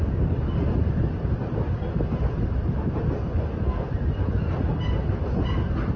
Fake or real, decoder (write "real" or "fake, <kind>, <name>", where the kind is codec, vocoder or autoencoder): real